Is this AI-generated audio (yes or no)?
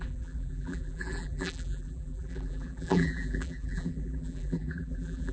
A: yes